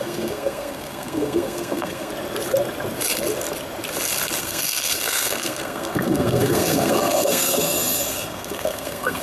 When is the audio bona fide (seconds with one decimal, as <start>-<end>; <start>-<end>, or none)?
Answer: 2.1-4.4

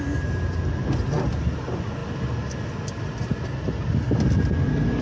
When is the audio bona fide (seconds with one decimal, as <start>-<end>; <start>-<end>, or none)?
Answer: 0.0-5.0

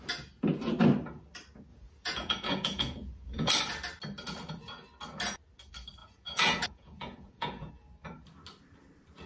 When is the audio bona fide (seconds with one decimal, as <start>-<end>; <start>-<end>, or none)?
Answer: 0.0-1.7; 3.5-6.0; 7.7-9.3

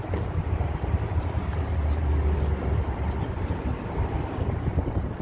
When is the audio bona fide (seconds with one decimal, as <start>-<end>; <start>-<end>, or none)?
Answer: 0.0-5.2

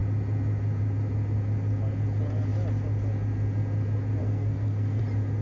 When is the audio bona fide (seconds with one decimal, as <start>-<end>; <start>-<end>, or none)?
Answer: 0.0-4.2; 5.0-5.4